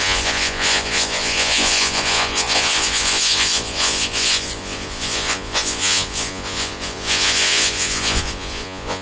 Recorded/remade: remade